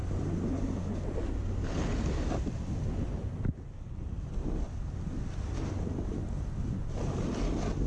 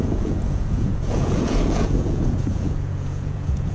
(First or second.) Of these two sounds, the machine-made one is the second